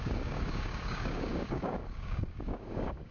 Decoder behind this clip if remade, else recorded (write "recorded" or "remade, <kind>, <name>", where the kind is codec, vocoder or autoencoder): remade, codec, DAC